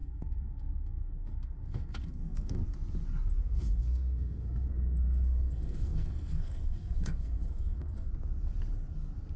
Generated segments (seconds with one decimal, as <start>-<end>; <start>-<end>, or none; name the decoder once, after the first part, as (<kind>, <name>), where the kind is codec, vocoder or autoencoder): 0.0-2.6 (codec, SNAC); 3.4-8.1